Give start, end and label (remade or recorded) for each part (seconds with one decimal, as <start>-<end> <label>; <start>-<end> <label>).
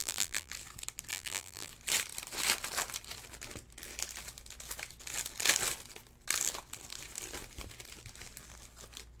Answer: 0.0-0.5 remade; 0.5-1.1 recorded; 1.1-1.7 remade; 1.7-9.2 recorded